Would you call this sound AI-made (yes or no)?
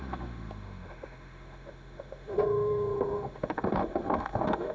yes